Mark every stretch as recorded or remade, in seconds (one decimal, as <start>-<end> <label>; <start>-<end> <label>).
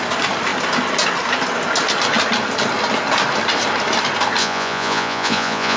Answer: 0.0-4.4 recorded; 4.4-5.8 remade